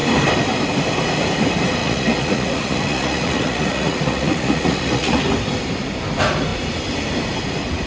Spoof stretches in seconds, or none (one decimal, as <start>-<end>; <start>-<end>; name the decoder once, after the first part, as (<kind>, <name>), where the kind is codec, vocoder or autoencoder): 1.8-5.2 (vocoder, Vocos)